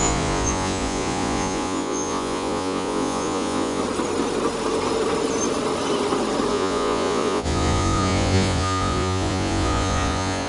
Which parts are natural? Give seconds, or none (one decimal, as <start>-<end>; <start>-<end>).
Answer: 3.8-6.5